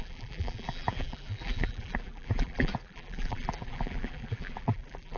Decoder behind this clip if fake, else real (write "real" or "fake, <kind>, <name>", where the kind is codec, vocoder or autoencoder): fake, vocoder, BigVGAN v2